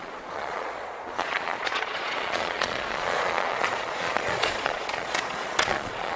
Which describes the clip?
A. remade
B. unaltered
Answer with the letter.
A